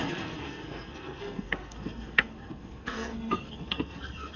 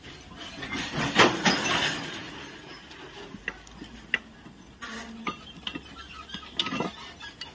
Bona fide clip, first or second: second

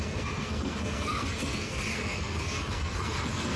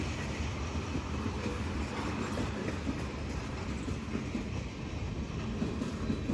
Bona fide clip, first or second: second